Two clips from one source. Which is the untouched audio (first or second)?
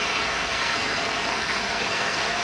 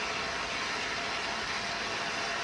second